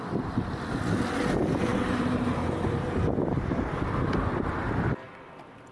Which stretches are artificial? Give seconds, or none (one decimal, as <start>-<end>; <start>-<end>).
1.7-3.1